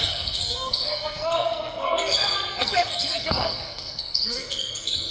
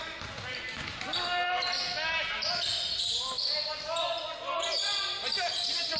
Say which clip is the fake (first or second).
first